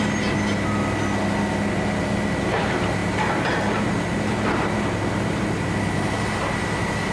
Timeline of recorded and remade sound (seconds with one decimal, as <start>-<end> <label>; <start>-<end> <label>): 0.0-7.1 recorded